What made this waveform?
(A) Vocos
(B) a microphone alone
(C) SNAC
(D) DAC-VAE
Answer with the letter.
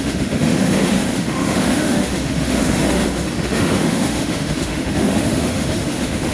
D